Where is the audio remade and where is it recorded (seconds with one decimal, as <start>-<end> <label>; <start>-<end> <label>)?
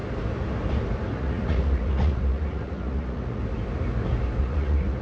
0.0-1.1 recorded; 1.1-3.4 remade; 3.4-4.4 recorded; 4.4-5.0 remade